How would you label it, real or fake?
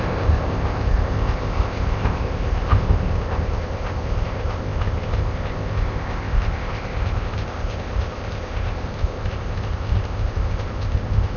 fake